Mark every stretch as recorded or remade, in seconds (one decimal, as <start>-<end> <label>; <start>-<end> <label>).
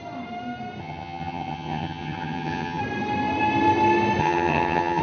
0.0-0.8 recorded; 0.8-2.8 remade; 2.8-4.2 recorded; 4.2-5.0 remade